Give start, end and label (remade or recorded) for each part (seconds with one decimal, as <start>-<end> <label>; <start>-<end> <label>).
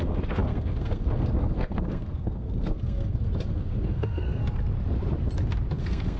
0.0-4.4 remade; 4.4-5.8 recorded; 5.8-6.2 remade